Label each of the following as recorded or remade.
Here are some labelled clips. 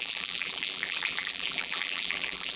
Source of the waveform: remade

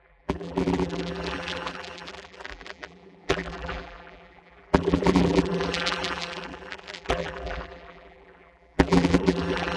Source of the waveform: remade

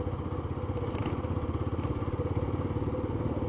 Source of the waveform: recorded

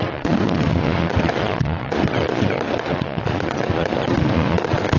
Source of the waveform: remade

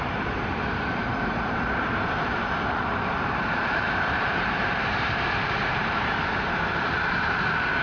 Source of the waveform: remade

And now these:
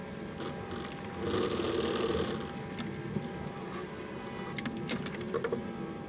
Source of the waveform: recorded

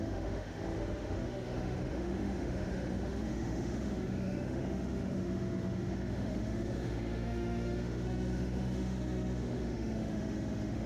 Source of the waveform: remade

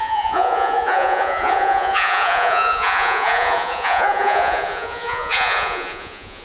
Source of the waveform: remade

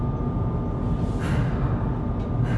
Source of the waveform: recorded